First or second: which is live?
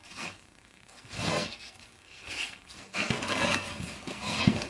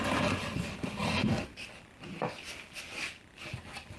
second